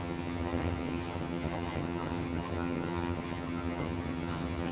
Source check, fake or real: fake